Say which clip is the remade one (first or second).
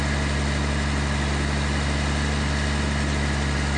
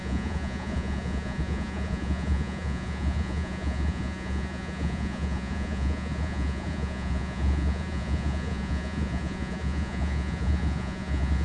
second